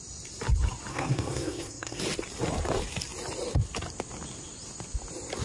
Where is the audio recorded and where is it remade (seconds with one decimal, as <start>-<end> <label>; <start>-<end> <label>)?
0.0-0.9 recorded; 0.9-2.0 remade; 2.0-5.4 recorded